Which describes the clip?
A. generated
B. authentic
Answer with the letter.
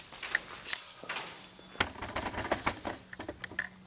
B